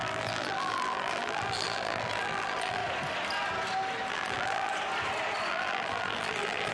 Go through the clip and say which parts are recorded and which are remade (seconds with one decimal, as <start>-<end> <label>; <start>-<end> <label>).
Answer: 0.0-2.8 remade; 2.8-4.1 recorded; 4.1-4.7 remade; 4.7-5.5 recorded; 5.5-6.7 remade